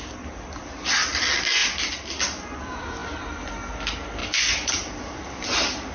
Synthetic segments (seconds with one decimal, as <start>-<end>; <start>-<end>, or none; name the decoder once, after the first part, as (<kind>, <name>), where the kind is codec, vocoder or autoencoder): 1.6-2.2 (vocoder, BigVGAN v2); 4.2-5.9